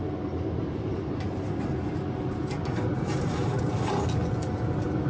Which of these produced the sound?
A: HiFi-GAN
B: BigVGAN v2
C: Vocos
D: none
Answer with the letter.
D